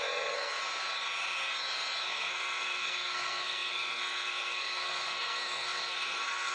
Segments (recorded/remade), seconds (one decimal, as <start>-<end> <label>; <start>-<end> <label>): 0.0-0.6 remade; 0.6-2.0 recorded; 2.0-6.5 remade